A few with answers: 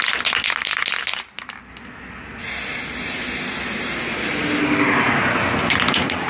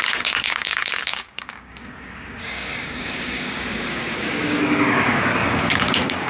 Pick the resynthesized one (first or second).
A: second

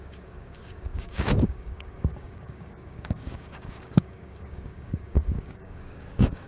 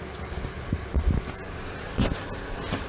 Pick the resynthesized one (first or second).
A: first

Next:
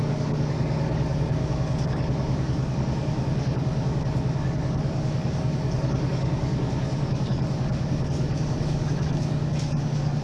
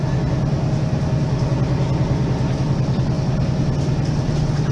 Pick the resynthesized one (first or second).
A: first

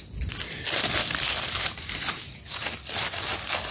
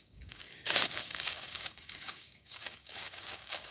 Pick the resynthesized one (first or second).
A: second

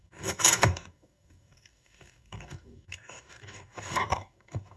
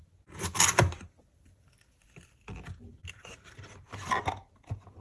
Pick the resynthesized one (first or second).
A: first